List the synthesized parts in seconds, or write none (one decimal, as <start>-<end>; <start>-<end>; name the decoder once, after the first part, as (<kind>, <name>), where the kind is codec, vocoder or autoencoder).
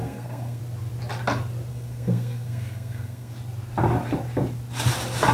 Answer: 0.0-0.6 (codec, SNAC); 1.7-3.3